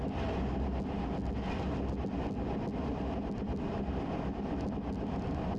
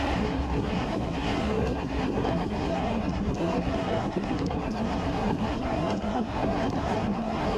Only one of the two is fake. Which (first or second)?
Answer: second